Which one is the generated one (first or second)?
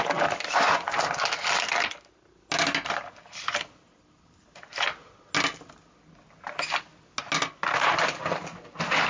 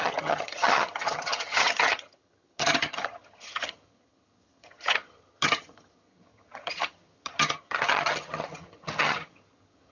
second